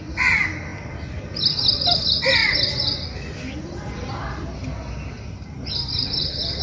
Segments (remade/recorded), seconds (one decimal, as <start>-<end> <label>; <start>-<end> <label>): 0.0-6.6 recorded